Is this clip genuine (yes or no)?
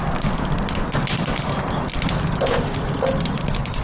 yes